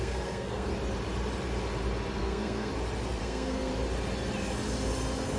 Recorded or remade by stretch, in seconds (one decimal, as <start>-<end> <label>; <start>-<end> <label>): 0.0-0.7 remade; 0.7-2.2 recorded; 2.2-2.7 remade; 2.7-3.2 recorded; 3.2-3.7 remade; 3.7-5.4 recorded